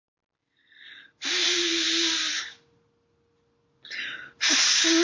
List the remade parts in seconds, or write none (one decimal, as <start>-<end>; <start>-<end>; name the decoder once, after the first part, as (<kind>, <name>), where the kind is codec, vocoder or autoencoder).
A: none